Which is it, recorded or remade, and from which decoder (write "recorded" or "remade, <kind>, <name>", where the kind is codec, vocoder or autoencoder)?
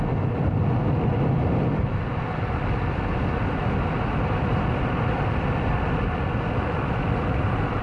recorded